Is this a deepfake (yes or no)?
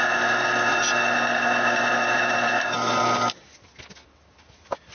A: no